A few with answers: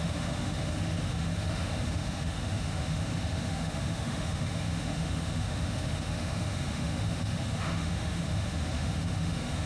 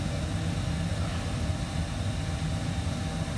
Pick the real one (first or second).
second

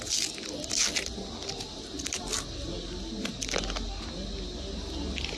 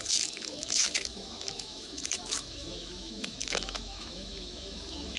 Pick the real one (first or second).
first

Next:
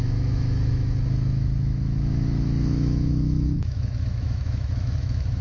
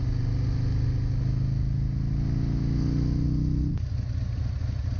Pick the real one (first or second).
second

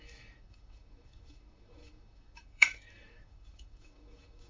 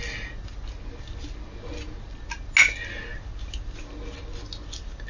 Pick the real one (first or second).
second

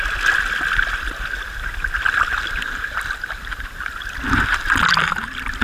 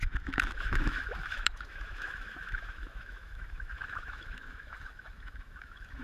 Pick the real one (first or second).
first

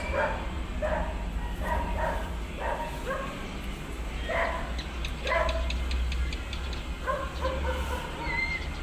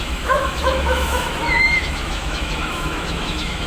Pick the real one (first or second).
first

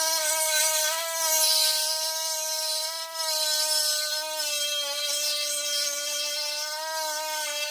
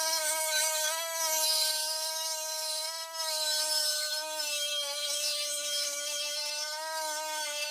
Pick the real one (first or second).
first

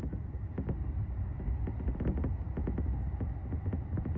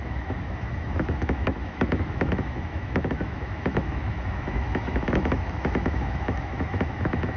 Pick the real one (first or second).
first